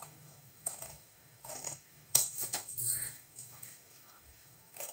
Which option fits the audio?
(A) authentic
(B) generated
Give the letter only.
B